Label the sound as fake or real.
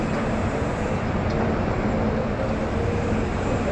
real